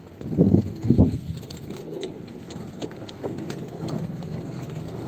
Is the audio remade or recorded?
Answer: remade